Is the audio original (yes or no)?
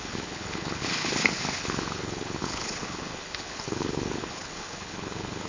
no